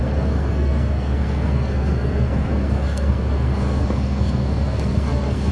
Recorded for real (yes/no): no